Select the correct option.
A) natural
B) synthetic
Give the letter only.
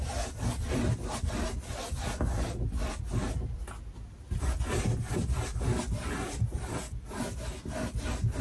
A